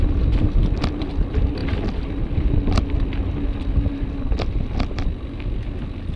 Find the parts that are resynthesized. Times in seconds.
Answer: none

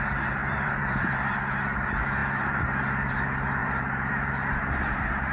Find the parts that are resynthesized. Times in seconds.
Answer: 0.4-1.3 (vocoder, BigVGAN v2); 3.6-4.3

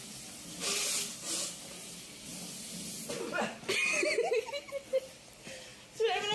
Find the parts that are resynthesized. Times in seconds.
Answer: none

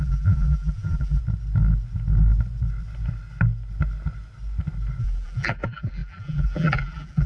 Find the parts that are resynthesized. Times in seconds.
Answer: 0.0-1.2 (vocoder, BigVGAN v2); 5.0-7.3